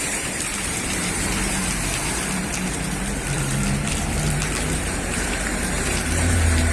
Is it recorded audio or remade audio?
remade